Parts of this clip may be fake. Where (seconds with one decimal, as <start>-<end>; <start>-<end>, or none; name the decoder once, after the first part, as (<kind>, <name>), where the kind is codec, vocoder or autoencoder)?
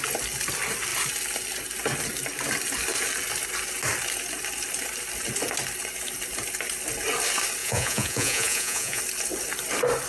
7.6-9.0 (vocoder, Vocos)